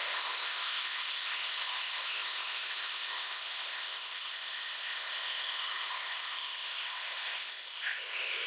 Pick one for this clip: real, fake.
fake